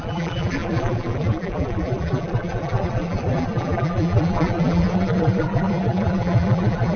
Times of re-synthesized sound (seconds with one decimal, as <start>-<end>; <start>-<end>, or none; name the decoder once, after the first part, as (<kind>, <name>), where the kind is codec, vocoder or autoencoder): 0.0-7.0 (vocoder, BigVGAN v2)